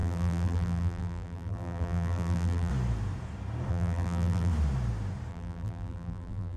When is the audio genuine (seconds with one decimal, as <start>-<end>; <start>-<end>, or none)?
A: 2.7-3.7; 4.5-5.3